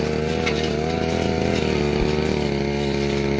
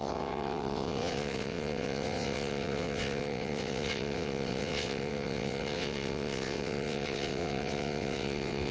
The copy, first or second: second